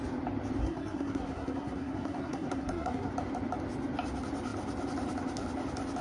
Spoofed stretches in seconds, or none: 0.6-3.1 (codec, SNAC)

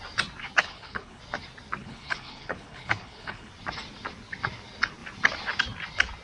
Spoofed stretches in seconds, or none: 0.6-1.2 (codec, HILCodec); 1.8-3.5